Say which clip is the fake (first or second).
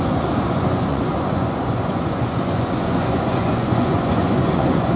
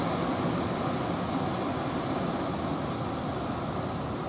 first